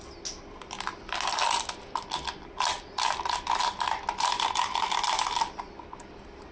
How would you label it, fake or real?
real